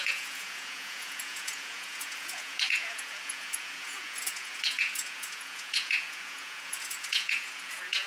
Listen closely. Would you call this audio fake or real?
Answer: fake